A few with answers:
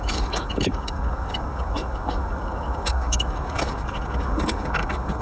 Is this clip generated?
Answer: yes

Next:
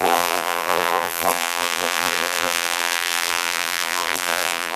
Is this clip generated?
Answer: yes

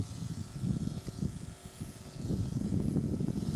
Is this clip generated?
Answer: yes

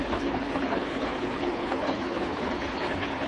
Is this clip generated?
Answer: yes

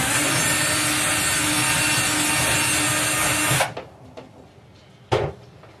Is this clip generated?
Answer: no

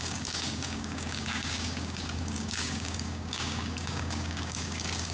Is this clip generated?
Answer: yes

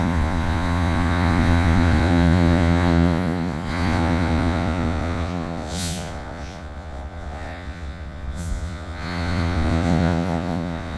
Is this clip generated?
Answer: yes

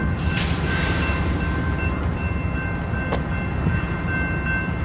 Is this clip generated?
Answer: no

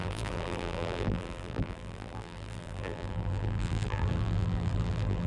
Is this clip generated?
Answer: yes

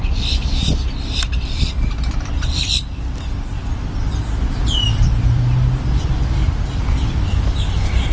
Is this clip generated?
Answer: yes